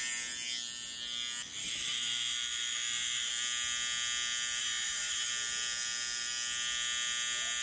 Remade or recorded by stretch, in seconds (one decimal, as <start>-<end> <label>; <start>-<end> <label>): 0.0-1.6 recorded; 1.6-3.3 remade; 3.3-4.6 recorded; 4.6-5.3 remade; 5.3-7.6 recorded